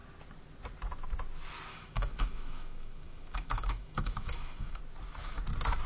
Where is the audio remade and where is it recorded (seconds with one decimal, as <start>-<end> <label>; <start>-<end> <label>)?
0.0-1.7 recorded; 1.7-4.8 remade; 4.8-5.9 recorded